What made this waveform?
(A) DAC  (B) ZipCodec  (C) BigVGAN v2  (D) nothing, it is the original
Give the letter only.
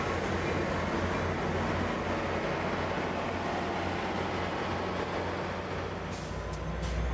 D